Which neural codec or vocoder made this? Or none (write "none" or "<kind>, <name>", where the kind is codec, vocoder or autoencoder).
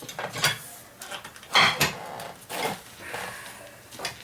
none